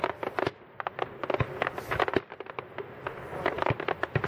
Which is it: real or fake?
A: real